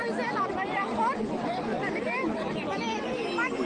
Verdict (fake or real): real